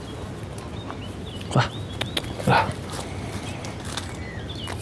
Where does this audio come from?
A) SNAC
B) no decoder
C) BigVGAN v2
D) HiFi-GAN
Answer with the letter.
B